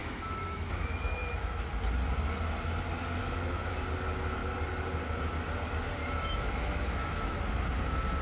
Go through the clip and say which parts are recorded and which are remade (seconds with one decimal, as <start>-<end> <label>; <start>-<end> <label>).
0.0-1.7 remade; 1.7-3.2 recorded; 3.2-3.8 remade; 3.8-6.0 recorded; 6.0-7.4 remade; 7.4-8.2 recorded